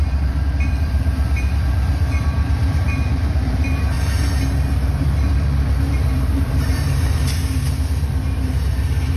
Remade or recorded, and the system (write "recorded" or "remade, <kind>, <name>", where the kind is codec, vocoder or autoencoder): remade, vocoder, BigVGAN v2